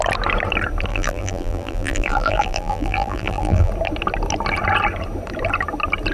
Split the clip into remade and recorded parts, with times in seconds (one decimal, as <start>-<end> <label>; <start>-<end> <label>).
0.0-0.9 recorded; 0.9-3.7 remade; 3.7-6.1 recorded